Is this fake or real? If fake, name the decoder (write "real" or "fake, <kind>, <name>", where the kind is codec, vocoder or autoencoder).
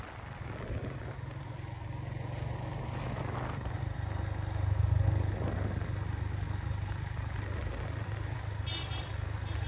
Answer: real